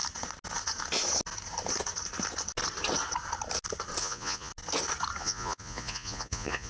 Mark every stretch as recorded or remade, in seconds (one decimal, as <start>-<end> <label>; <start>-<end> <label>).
0.0-4.0 recorded; 4.0-4.5 remade; 4.5-5.2 recorded; 5.2-6.7 remade